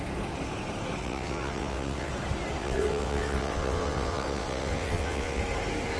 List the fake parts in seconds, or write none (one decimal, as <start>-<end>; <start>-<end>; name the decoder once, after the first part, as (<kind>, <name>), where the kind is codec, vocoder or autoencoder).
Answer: 1.0-2.1 (vocoder, WaveNeXt); 2.6-5.4